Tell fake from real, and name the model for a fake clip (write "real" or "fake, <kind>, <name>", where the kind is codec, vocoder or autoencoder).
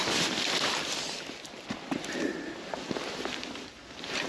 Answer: fake, vocoder, BigVGAN v2